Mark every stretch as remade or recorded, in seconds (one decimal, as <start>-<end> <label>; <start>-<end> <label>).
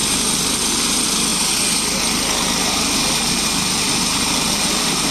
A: 0.0-1.3 remade; 1.3-3.9 recorded; 3.9-5.1 remade